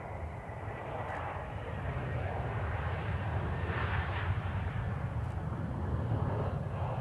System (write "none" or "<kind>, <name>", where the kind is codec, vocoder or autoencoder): none